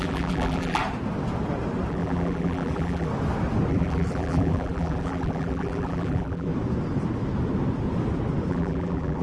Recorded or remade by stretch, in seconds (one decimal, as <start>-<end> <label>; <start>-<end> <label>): 0.0-0.8 remade; 0.8-1.9 recorded; 1.9-3.1 remade; 3.1-3.7 recorded; 3.7-6.5 remade; 6.5-8.5 recorded; 8.5-9.2 remade